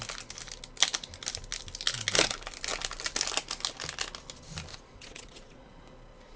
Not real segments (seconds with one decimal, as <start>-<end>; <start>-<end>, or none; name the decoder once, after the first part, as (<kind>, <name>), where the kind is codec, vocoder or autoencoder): 4.7-5.7 (vocoder, Vocos)